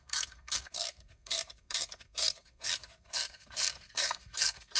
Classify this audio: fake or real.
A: fake